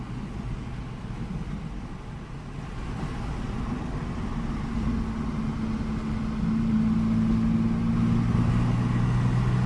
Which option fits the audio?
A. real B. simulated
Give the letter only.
A